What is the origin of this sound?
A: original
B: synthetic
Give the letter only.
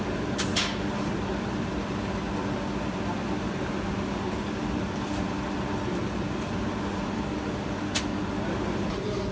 A